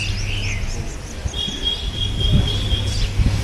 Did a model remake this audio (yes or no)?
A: no